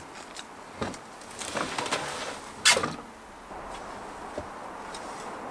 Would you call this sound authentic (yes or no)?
yes